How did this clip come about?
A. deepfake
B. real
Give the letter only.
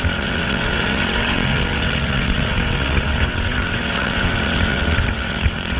A